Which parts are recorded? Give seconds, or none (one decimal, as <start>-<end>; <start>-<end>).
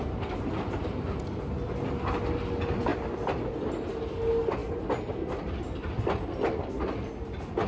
0.0-7.7